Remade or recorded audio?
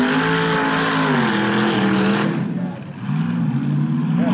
recorded